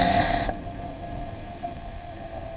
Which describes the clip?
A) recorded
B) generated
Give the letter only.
B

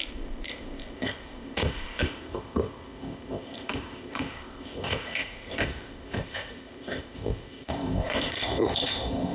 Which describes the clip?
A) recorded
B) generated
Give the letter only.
B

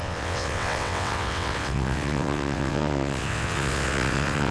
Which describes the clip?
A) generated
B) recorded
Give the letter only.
A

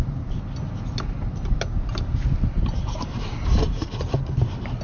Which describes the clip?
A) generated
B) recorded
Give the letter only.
B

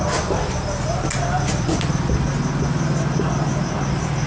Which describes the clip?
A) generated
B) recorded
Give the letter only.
B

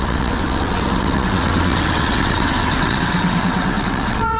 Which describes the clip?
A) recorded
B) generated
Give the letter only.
B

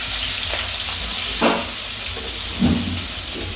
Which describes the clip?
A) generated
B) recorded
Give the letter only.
B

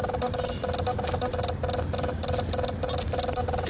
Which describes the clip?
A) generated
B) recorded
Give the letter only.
B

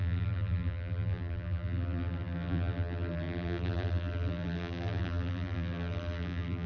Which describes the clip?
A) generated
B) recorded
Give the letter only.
A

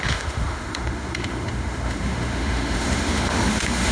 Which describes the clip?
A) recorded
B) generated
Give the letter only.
B